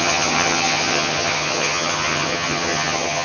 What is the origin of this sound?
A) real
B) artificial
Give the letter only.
B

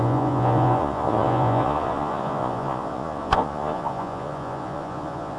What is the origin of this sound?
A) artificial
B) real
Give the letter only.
A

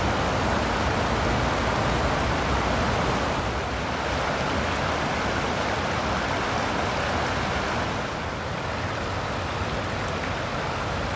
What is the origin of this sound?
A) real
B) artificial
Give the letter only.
A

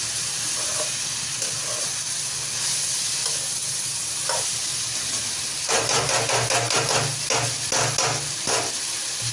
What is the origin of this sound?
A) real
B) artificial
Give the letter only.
A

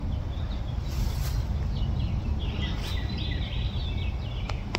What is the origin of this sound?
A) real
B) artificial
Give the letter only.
A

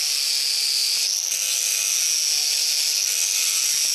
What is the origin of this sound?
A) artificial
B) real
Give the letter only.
B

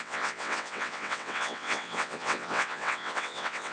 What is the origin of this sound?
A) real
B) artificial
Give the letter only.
B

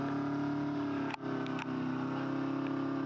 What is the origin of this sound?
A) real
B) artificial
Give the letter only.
A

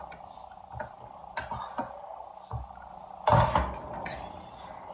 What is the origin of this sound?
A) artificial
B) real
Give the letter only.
B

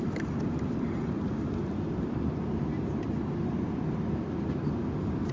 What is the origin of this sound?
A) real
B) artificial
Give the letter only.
A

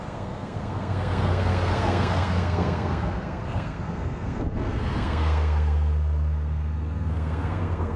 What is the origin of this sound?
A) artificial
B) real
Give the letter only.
A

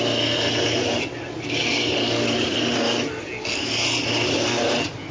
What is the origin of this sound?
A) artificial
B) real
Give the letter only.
B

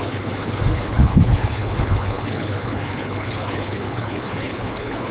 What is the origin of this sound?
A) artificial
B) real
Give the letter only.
A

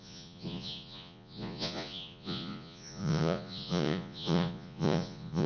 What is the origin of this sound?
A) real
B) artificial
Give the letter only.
B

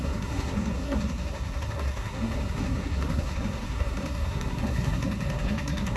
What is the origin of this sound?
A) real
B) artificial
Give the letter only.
B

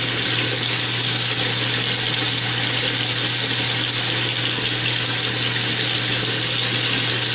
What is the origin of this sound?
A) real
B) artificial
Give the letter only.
A